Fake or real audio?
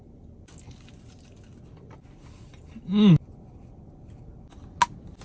real